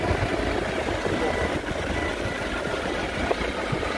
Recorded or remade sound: recorded